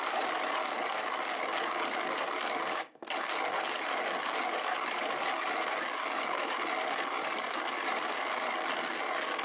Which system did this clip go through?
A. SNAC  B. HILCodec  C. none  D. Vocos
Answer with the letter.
C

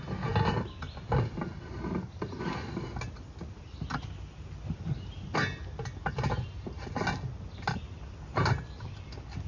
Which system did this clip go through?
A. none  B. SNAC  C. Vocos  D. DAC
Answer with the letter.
A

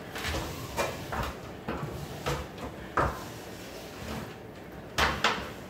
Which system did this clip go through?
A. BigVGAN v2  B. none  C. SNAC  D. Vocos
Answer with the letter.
B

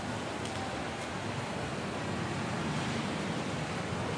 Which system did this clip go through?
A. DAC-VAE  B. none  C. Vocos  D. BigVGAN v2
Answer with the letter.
B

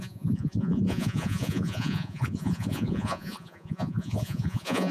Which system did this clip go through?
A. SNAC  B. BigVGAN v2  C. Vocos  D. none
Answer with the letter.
C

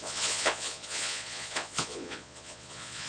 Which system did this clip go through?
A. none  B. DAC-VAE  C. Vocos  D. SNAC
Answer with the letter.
C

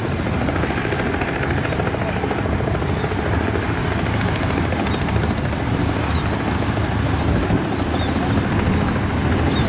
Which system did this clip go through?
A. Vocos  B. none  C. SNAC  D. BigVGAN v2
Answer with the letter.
B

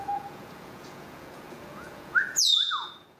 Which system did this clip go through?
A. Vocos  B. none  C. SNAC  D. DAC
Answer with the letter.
A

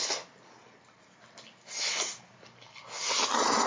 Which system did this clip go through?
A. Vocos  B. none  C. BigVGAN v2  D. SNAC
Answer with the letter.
B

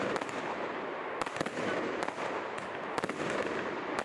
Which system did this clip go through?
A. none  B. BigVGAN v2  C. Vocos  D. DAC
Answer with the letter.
A